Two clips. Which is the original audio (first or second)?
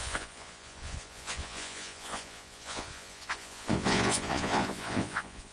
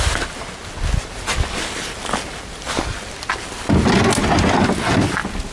second